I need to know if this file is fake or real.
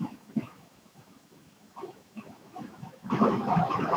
fake